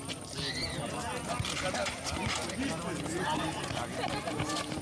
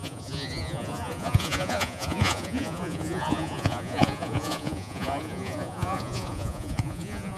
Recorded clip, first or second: first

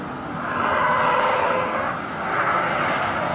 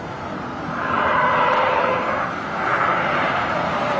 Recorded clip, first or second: first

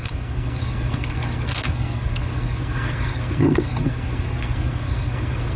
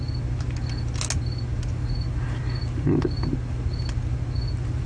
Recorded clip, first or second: second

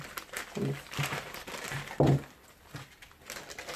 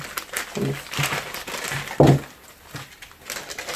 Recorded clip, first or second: second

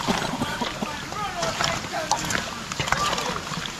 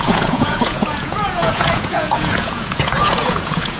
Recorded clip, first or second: first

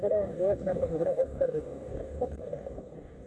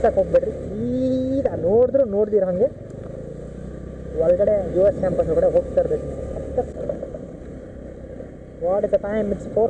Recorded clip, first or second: second